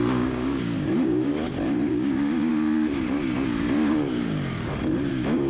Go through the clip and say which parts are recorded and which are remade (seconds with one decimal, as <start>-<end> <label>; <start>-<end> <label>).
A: 0.0-1.3 remade; 1.3-1.9 recorded; 1.9-2.5 remade; 2.5-5.1 recorded; 5.1-5.5 remade